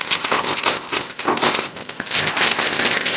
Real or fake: fake